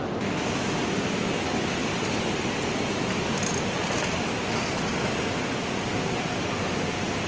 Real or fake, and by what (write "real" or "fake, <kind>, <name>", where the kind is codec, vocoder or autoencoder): real